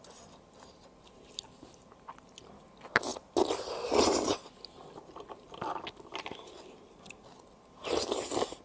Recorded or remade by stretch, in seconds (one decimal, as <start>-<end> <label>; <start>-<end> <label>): 0.0-8.6 recorded